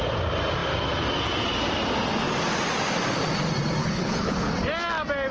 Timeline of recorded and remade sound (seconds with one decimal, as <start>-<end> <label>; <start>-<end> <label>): 0.0-3.8 recorded; 3.8-4.5 remade; 4.5-5.3 recorded